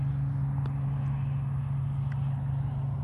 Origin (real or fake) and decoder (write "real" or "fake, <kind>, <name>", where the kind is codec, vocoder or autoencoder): real